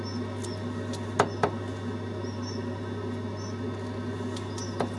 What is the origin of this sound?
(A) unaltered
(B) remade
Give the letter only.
A